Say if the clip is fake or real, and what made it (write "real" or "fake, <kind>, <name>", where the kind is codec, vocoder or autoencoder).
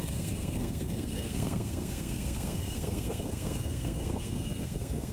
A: fake, codec, SNAC